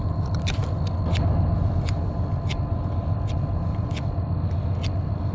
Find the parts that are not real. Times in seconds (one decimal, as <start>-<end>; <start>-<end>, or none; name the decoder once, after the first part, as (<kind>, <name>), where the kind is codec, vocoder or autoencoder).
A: none